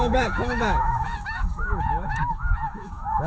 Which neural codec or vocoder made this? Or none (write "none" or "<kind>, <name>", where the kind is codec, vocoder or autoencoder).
autoencoder, DAC-VAE